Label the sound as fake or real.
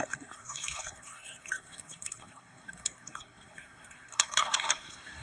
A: fake